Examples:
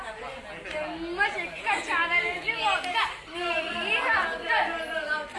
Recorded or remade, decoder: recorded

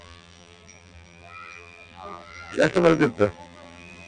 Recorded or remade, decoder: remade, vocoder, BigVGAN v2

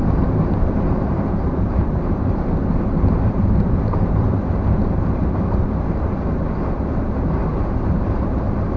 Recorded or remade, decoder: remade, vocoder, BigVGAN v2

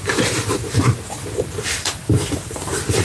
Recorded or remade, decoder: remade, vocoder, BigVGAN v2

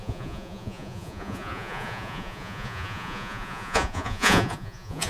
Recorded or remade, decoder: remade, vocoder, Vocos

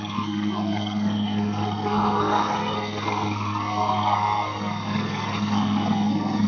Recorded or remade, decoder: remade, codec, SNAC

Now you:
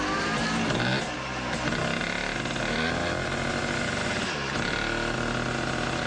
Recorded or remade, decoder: recorded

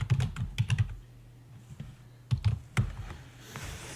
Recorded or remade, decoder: recorded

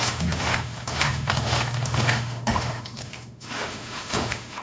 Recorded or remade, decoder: remade, autoencoder, DAC-VAE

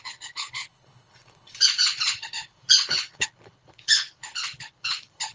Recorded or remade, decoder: remade, codec, HILCodec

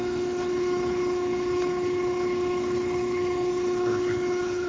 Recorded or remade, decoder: remade, codec, HILCodec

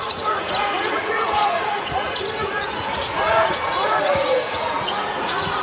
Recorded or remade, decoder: remade, vocoder, Vocos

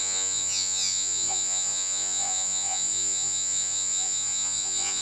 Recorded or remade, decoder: remade, vocoder, Vocos